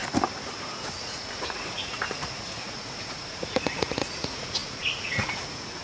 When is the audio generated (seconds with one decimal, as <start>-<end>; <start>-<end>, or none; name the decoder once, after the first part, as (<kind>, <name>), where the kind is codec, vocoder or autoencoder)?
0.8-5.8 (vocoder, Vocos)

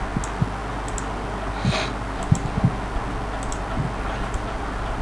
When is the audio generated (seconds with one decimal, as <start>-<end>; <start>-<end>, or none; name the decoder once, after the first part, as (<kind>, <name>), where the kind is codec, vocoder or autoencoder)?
none